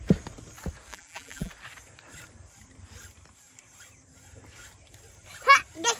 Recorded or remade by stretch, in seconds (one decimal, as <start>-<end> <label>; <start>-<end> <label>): 0.0-0.9 recorded; 0.9-1.5 remade; 1.5-6.0 recorded